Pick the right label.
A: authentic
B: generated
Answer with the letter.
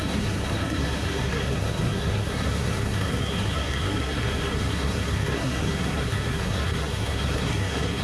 B